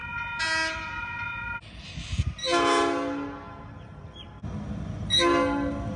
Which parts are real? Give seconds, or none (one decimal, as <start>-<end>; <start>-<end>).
0.0-6.0